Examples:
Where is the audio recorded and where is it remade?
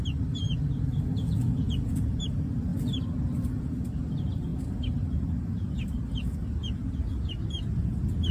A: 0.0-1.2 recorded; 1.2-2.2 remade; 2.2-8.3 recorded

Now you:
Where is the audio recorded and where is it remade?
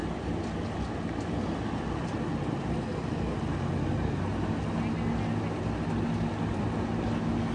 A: 0.0-7.5 recorded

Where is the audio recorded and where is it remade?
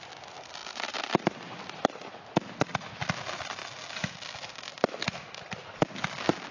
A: 0.0-6.5 recorded